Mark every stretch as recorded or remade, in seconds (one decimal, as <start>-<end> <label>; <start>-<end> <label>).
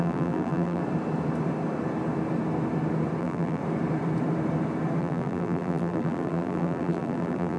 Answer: 0.0-0.8 remade; 0.8-3.2 recorded; 3.2-3.6 remade; 3.6-5.0 recorded; 5.0-7.6 remade